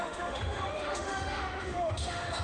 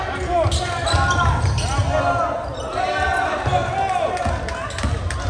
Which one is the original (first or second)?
second